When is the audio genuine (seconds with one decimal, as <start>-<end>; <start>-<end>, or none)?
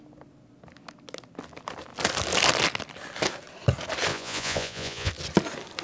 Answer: 0.0-4.1; 5.1-5.8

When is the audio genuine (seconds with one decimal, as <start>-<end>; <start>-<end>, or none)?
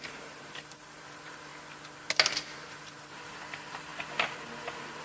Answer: 1.5-2.5; 3.9-5.0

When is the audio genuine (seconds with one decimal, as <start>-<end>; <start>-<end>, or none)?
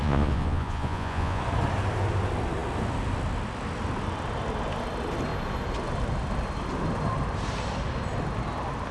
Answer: 1.4-8.9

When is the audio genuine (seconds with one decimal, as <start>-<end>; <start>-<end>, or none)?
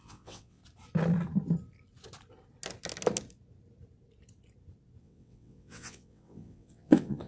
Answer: 0.6-5.0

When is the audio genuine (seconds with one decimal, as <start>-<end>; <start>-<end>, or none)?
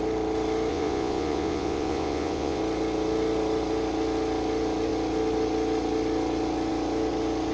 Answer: 0.0-0.7; 2.6-7.5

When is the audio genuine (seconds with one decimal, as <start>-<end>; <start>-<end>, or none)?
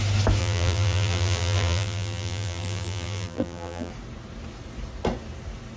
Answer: 0.0-0.4; 3.9-5.8